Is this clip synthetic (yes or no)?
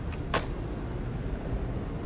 no